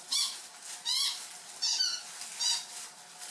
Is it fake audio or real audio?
real